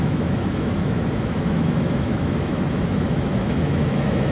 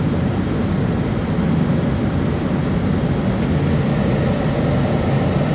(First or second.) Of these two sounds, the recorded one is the second